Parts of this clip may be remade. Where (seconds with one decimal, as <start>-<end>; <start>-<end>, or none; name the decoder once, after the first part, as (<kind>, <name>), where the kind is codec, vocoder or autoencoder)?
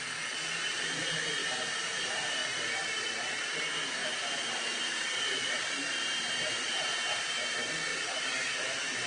1.4-2.0 (vocoder, BigVGAN v2); 2.4-3.6; 4.0-7.3; 7.9-9.1